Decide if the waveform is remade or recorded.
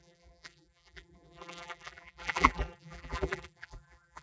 remade